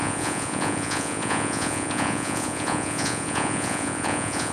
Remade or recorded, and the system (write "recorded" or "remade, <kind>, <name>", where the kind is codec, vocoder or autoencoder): remade, vocoder, Vocos